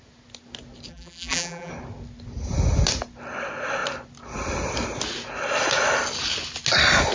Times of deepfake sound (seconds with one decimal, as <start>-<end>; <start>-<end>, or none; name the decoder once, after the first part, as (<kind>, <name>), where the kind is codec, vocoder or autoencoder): 0.9-1.7 (vocoder, BigVGAN v2)